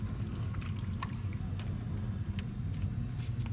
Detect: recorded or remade recorded